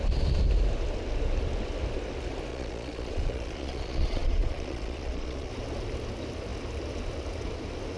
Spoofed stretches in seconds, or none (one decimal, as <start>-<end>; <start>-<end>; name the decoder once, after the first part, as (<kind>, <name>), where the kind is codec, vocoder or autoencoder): 2.5-5.5 (vocoder, Vocos)